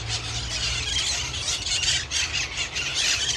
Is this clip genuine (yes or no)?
yes